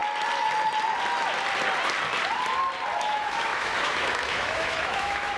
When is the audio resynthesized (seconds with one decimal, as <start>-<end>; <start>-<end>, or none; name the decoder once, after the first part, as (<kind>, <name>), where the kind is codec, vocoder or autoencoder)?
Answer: 3.0-5.4 (autoencoder, DAC-VAE)